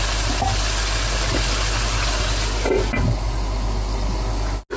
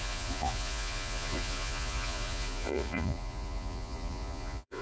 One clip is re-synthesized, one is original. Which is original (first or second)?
first